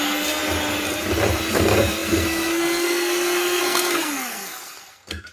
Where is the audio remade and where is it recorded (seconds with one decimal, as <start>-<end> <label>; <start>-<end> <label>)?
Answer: 0.0-0.4 remade; 0.4-1.5 recorded; 1.5-5.3 remade